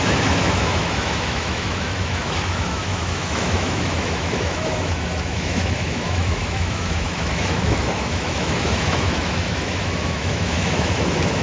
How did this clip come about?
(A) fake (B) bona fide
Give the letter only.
A